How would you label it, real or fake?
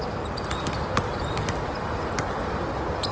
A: real